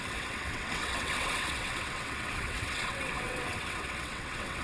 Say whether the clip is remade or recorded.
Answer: remade